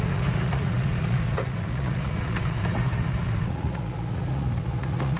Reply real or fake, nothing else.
fake